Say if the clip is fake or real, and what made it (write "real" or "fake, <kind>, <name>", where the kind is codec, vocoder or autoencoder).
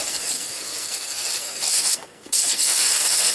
fake, codec, SNAC